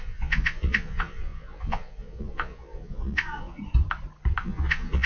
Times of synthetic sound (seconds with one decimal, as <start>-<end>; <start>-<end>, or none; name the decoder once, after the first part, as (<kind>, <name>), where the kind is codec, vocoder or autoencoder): 0.0-3.6 (vocoder, Vocos); 4.4-5.1